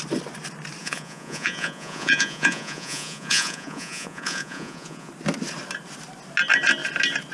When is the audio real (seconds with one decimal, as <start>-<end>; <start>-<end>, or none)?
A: 0.0-0.8; 5.1-7.3